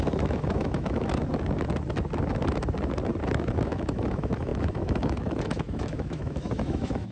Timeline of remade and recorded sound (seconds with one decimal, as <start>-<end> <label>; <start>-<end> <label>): 0.0-1.2 remade; 1.2-3.5 recorded; 3.5-7.1 remade